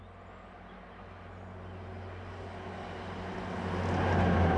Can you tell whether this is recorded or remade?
recorded